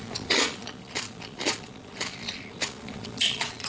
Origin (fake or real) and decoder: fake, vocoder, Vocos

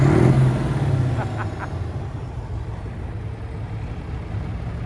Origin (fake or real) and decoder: real